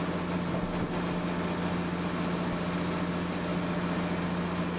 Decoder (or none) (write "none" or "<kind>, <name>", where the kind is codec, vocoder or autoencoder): none